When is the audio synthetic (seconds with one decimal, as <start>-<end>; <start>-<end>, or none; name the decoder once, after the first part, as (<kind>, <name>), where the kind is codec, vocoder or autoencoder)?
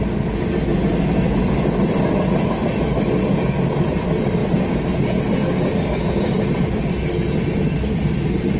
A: none